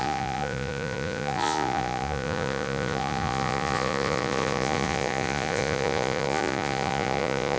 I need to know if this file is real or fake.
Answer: fake